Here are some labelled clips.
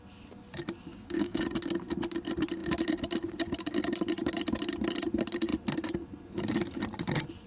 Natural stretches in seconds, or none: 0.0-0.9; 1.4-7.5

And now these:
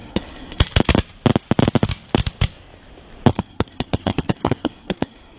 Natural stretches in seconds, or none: 0.6-3.3

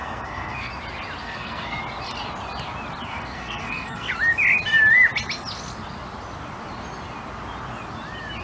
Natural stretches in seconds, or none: 0.7-1.2; 1.8-3.1; 4.1-8.4

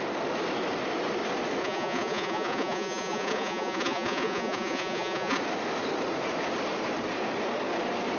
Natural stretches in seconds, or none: 0.0-1.6; 5.4-8.2

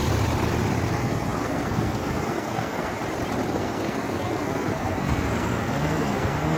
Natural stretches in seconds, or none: 0.0-0.9; 3.0-3.5